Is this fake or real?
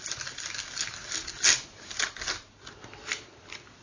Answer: real